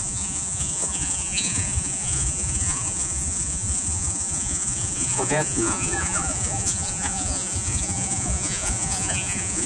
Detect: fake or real fake